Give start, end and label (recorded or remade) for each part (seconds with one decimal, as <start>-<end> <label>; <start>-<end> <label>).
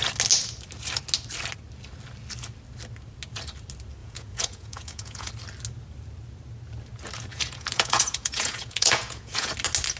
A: 0.0-4.0 recorded; 4.0-5.3 remade; 5.3-7.3 recorded; 7.3-9.5 remade; 9.5-10.0 recorded